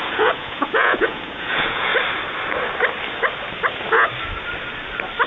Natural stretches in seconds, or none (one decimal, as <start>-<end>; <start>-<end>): 1.9-5.3